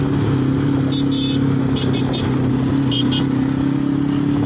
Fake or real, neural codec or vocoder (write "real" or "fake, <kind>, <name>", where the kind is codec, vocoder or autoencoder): real